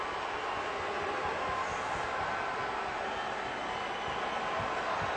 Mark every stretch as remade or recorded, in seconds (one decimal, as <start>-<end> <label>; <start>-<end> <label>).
0.0-5.2 recorded